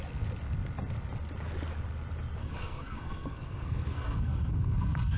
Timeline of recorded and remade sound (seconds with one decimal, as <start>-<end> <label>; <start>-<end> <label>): 0.0-2.4 recorded; 2.4-5.2 remade